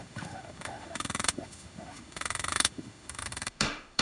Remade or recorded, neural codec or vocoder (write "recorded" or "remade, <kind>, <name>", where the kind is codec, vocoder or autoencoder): remade, autoencoder, DAC-VAE